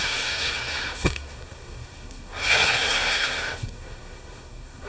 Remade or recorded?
remade